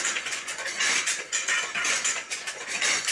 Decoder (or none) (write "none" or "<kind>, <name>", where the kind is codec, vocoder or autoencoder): vocoder, Vocos